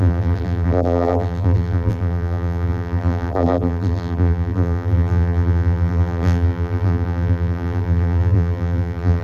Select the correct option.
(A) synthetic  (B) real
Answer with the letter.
A